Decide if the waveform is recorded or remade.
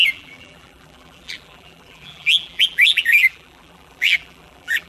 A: remade